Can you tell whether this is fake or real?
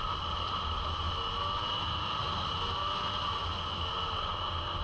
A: real